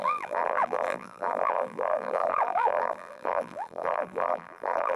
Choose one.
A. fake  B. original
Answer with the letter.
A